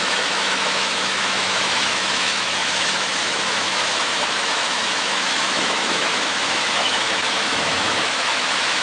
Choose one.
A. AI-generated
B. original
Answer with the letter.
A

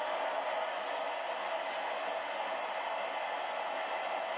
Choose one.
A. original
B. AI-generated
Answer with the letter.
A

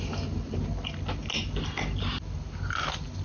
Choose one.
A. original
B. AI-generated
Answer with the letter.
A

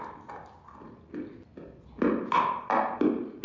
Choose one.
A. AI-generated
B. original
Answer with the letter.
B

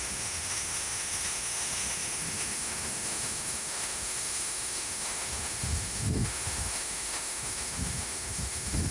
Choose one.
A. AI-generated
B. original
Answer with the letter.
A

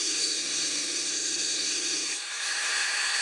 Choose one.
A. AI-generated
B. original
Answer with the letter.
A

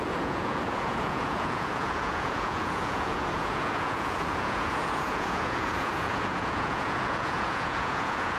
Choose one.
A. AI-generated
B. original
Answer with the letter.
A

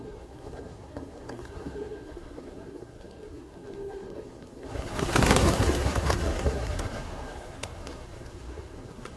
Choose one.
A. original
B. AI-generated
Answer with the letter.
B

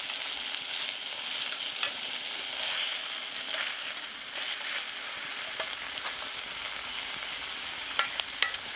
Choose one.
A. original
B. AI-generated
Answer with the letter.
A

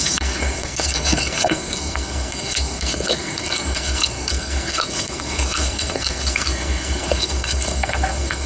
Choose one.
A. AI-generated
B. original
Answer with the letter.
A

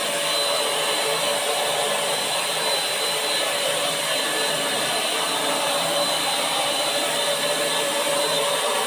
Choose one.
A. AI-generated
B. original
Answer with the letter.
A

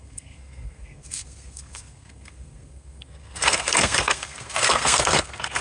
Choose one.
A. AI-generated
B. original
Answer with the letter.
A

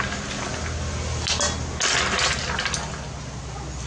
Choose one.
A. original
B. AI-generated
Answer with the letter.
A